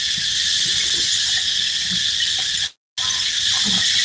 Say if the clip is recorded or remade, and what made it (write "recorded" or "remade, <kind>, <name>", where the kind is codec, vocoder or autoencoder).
recorded